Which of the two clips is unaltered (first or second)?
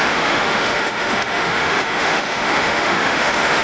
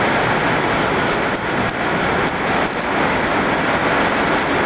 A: second